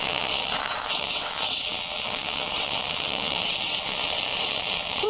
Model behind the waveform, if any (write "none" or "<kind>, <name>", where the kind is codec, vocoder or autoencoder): vocoder, WaveNeXt